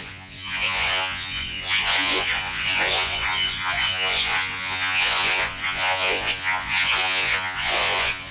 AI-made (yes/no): yes